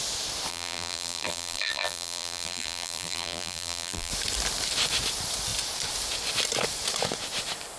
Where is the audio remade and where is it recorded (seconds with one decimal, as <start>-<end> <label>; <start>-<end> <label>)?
0.0-0.5 recorded; 0.5-4.1 remade; 4.1-7.8 recorded

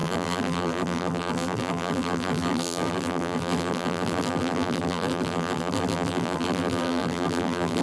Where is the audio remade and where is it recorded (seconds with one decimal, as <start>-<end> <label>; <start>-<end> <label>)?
0.0-7.8 remade

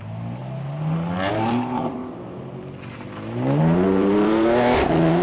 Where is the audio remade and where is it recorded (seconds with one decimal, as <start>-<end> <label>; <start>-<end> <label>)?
0.0-0.4 remade; 0.4-1.3 recorded; 1.3-2.0 remade; 2.0-3.6 recorded; 3.6-5.2 remade

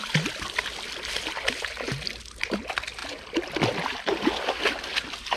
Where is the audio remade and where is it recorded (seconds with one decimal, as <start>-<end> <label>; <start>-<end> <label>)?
0.0-3.0 recorded; 3.0-3.8 remade; 3.8-5.4 recorded

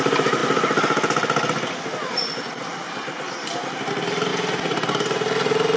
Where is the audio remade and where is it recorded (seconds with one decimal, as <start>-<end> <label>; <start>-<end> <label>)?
0.0-4.3 recorded; 4.3-5.8 remade

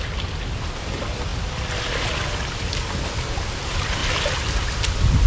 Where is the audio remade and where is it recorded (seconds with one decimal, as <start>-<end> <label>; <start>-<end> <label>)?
0.0-5.3 recorded